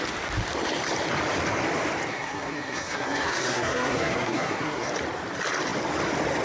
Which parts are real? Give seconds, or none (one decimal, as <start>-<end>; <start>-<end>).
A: 0.0-2.1; 4.9-6.4